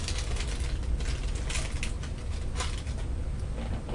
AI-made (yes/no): no